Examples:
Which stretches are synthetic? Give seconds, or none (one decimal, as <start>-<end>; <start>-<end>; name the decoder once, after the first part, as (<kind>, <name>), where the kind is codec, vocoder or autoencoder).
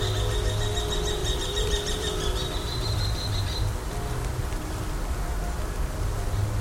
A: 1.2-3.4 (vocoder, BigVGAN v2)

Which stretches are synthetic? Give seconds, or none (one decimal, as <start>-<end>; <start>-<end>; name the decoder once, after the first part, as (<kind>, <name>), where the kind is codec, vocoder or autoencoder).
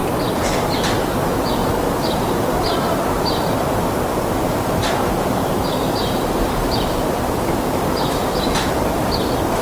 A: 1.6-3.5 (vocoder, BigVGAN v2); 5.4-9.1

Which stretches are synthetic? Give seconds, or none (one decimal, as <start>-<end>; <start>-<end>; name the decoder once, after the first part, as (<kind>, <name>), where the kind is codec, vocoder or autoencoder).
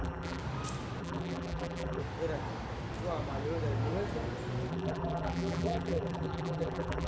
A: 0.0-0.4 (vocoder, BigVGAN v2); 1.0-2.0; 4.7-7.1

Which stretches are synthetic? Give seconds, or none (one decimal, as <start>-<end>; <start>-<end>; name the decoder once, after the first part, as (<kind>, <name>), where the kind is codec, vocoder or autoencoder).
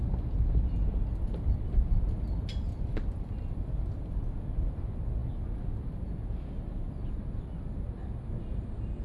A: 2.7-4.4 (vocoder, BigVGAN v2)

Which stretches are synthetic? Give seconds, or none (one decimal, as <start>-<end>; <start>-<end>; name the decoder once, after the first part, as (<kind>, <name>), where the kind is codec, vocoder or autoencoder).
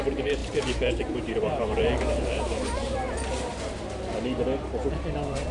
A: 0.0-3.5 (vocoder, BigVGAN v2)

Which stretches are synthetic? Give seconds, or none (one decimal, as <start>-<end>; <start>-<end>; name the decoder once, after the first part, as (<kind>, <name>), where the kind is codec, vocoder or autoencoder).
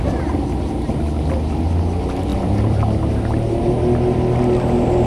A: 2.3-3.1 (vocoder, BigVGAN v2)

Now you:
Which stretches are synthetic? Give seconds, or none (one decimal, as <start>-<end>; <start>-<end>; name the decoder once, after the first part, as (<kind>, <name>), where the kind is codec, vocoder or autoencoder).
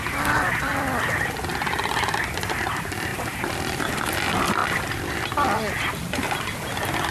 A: 3.1-3.8 (vocoder, BigVGAN v2); 4.6-5.1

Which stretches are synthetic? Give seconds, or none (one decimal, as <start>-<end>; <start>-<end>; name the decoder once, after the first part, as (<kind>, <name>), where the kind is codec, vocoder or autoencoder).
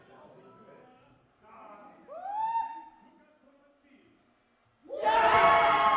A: 1.8-3.1 (vocoder, BigVGAN v2); 4.8-5.4